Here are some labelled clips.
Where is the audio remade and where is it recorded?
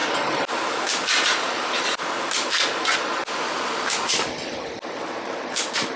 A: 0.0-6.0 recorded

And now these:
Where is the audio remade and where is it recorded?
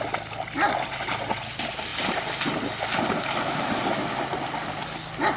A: 0.0-5.4 recorded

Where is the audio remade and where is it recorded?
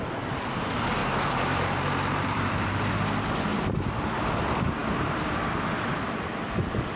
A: 0.0-1.0 recorded; 1.0-2.9 remade; 2.9-3.5 recorded; 3.5-4.0 remade; 4.0-7.0 recorded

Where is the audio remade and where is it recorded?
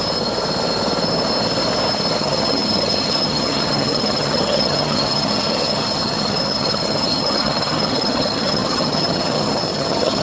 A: 0.0-2.2 recorded; 2.2-10.2 remade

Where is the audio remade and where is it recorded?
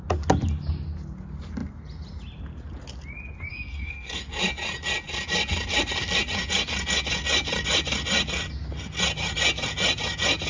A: 0.0-3.5 recorded; 3.5-4.2 remade; 4.2-10.5 recorded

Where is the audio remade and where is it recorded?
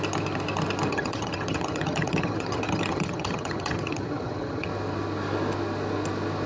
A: 0.0-0.9 recorded; 0.9-4.7 remade; 4.7-6.5 recorded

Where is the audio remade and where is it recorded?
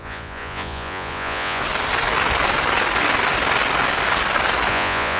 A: 0.0-1.6 remade; 1.6-4.7 recorded; 4.7-5.2 remade